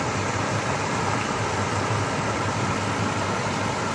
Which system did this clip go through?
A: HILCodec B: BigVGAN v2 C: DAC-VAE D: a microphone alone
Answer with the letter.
D